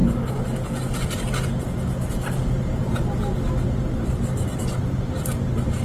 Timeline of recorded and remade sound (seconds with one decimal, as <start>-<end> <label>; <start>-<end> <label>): 0.0-5.8 recorded